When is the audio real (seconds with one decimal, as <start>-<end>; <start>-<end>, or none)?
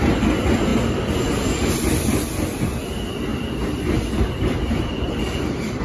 0.0-0.7; 2.6-3.3